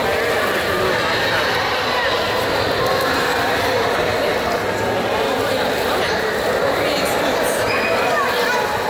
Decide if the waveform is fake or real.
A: real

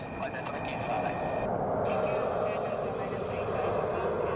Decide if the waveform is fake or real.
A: real